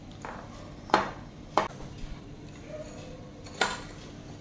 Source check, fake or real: fake